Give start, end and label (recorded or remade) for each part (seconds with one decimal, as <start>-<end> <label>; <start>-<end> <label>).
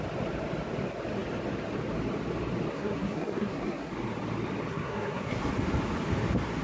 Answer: 0.0-2.7 recorded; 2.7-3.9 remade; 3.9-4.7 recorded; 4.7-5.5 remade; 5.5-6.6 recorded